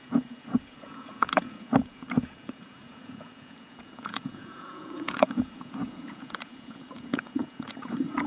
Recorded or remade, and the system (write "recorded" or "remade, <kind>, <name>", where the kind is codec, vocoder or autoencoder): remade, vocoder, Vocos